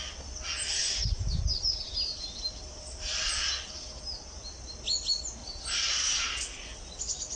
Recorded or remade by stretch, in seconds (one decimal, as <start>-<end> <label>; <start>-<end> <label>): 0.0-0.8 recorded; 0.8-1.4 remade; 1.4-2.1 recorded; 2.1-3.2 remade; 3.2-5.4 recorded; 5.4-6.3 remade; 6.3-7.4 recorded